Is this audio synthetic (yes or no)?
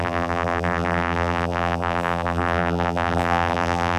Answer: yes